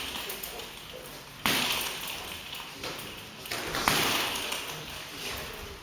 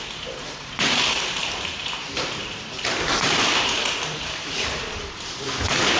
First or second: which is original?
first